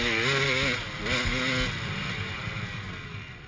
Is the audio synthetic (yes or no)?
no